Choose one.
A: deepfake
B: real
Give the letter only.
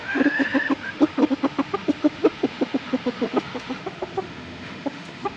A